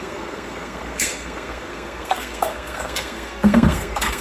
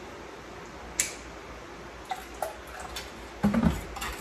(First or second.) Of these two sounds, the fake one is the first